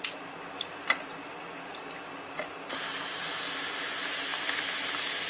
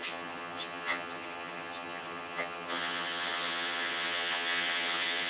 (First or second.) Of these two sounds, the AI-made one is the second